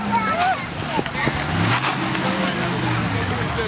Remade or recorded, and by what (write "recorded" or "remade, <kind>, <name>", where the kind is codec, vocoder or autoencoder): recorded